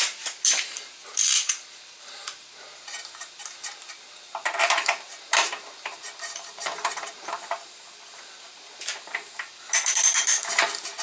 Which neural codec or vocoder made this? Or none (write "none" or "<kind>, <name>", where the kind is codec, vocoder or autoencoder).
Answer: vocoder, BigVGAN v2